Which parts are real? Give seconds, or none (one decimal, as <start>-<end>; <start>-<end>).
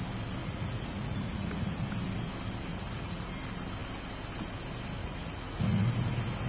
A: 0.0-0.4; 1.9-2.7; 3.3-5.0; 5.9-6.5